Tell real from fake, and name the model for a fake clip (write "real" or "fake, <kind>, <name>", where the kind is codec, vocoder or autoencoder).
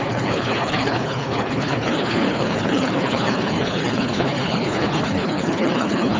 fake, codec, HILCodec